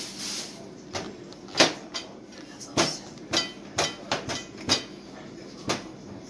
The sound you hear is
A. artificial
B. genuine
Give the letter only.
B